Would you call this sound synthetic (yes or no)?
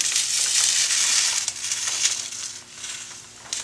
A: no